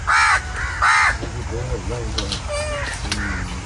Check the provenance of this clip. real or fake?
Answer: real